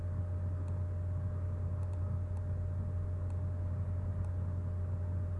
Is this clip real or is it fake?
real